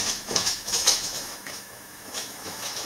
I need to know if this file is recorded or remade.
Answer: remade